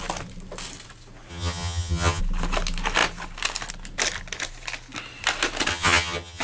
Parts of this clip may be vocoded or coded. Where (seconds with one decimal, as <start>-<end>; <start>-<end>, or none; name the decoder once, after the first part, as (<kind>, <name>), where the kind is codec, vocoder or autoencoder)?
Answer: 1.3-2.2 (vocoder, HiFi-GAN); 5.7-6.4